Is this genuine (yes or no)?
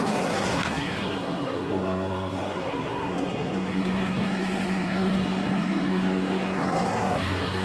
no